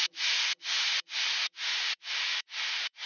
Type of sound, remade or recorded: remade